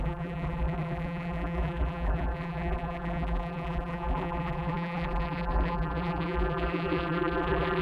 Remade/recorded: remade